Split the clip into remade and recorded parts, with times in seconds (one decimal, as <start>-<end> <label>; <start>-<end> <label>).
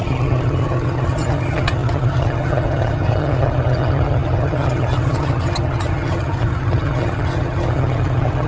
0.0-8.5 remade